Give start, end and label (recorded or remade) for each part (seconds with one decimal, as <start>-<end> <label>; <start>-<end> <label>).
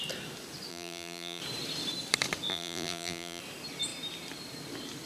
0.0-0.7 recorded; 0.7-1.4 remade; 1.4-2.5 recorded; 2.5-3.4 remade; 3.4-5.1 recorded